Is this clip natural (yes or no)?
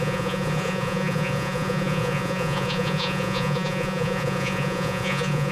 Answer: no